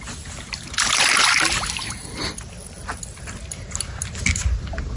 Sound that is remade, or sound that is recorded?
recorded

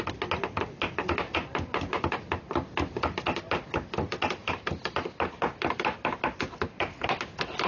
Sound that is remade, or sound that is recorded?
recorded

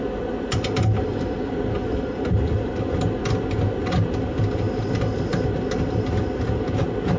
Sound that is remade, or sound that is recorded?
recorded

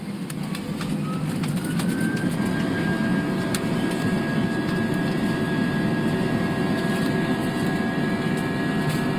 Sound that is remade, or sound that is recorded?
recorded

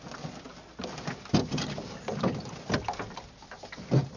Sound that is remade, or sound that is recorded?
recorded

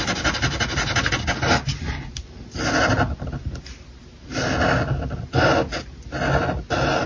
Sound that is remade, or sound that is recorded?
recorded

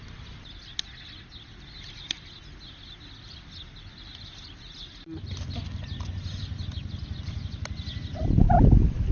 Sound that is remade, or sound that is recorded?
recorded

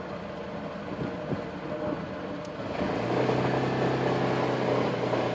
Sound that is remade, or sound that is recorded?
recorded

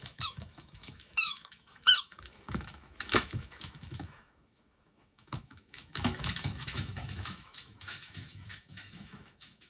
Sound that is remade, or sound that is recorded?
remade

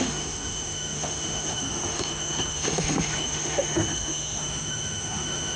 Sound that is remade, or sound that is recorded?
remade